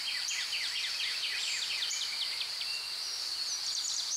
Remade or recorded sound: recorded